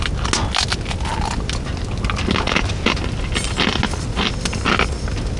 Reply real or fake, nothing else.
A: real